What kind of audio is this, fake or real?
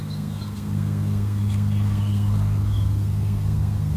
fake